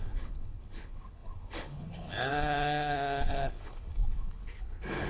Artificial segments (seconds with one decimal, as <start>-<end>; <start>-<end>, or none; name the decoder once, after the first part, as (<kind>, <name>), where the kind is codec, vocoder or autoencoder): 0.0-5.1 (codec, HILCodec)